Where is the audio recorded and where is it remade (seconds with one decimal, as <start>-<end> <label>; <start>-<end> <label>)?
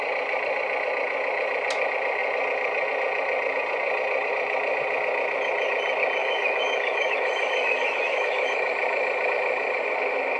0.0-6.2 recorded; 6.2-8.7 remade; 8.7-10.4 recorded